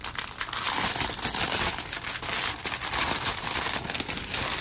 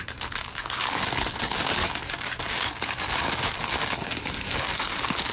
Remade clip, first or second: second